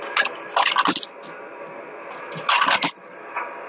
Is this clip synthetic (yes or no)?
no